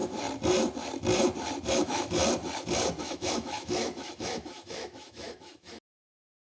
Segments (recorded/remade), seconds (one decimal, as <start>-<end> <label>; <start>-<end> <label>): 0.0-1.7 recorded; 1.7-2.2 remade; 2.2-3.0 recorded; 3.0-6.5 remade